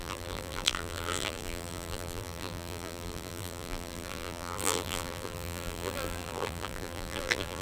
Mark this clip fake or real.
fake